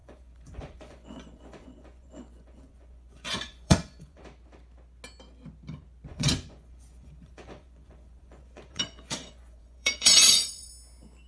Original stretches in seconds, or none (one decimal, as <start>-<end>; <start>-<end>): 4.2-6.1; 10.7-11.3